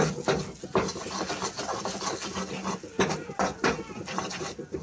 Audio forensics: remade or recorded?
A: recorded